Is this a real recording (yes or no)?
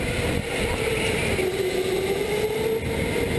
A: yes